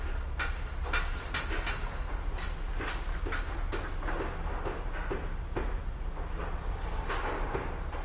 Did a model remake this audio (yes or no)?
no